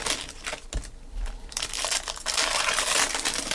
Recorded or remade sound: recorded